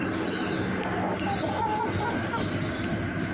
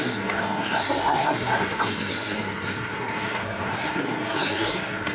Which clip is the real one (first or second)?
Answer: first